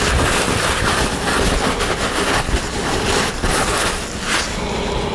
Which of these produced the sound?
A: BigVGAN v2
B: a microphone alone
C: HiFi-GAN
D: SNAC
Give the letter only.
B